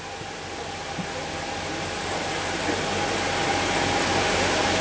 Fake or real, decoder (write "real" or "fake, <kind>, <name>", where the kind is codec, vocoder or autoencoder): real